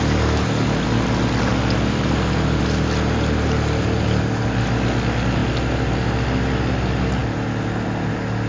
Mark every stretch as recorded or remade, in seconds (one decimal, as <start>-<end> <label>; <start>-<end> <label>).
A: 0.0-1.5 recorded; 1.5-2.6 remade; 2.6-8.5 recorded